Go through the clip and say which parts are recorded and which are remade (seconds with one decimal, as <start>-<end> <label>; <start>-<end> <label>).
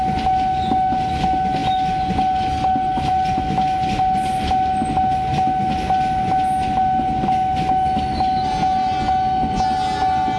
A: 0.0-10.4 recorded